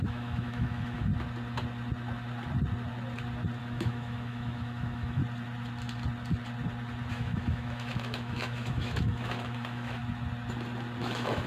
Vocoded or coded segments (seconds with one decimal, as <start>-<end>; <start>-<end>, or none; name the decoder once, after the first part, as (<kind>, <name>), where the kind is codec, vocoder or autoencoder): 0.0-1.1 (autoencoder, DAC-VAE); 3.6-5.2; 7.1-10.0; 11.0-11.5